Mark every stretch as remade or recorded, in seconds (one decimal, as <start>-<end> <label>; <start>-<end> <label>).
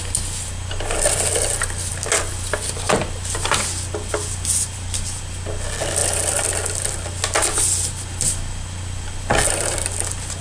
0.0-10.4 recorded